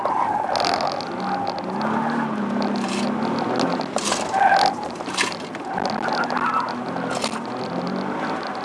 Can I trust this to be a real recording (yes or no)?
yes